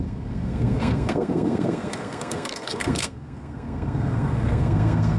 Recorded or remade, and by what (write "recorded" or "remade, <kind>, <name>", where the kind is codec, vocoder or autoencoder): remade, codec, SNAC